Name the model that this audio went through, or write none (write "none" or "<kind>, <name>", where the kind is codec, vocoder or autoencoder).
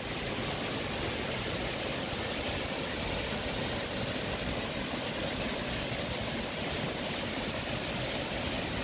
none